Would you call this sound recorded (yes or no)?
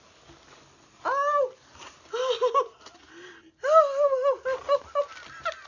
yes